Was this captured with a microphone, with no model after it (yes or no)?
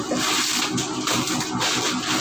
yes